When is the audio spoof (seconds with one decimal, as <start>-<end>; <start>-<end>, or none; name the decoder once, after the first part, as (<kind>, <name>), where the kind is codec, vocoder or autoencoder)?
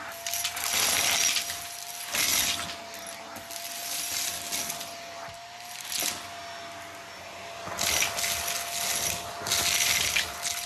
none